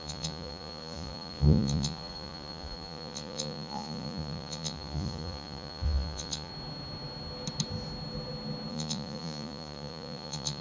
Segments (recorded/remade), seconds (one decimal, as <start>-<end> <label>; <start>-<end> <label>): 0.0-6.5 remade; 6.5-8.7 recorded; 8.7-10.6 remade